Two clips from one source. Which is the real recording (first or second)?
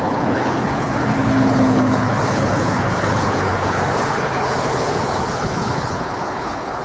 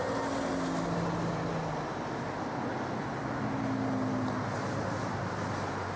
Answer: second